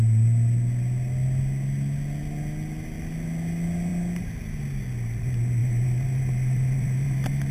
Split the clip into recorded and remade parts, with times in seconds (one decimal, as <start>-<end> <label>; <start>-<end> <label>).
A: 0.0-5.6 recorded; 5.6-7.5 remade